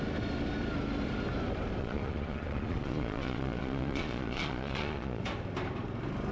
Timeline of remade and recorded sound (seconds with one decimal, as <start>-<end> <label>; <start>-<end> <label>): 0.0-1.8 recorded; 1.8-5.2 remade; 5.2-6.3 recorded